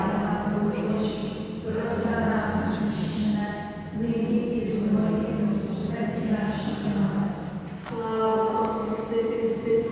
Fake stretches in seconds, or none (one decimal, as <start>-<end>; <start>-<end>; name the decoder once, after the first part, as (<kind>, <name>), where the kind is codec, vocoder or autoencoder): 5.8-6.6 (vocoder, Vocos); 8.8-9.9